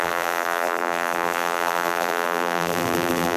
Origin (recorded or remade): remade